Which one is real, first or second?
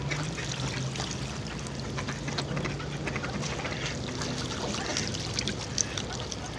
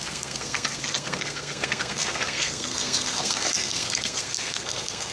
first